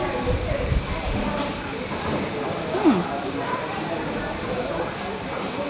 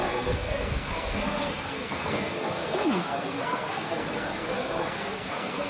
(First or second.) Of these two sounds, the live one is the first